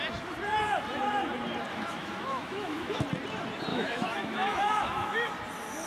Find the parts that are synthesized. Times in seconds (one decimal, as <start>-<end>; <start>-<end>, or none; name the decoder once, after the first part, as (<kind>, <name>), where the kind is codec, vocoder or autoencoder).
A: 1.7-3.0 (autoencoder, DAC-VAE); 3.7-5.3